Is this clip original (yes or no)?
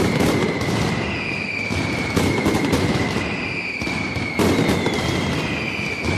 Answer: yes